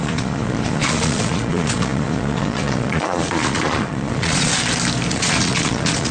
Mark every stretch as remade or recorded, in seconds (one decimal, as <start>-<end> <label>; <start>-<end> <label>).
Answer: 0.0-4.5 remade; 4.5-5.1 recorded; 5.1-6.1 remade